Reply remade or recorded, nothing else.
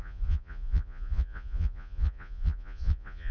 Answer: remade